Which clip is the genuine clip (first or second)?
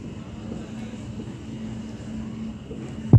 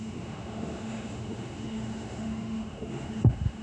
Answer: first